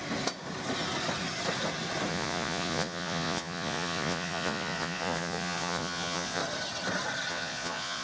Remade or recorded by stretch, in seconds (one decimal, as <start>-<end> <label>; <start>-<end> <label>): 0.0-2.1 recorded; 2.1-6.4 remade; 6.4-7.3 recorded; 7.3-8.0 remade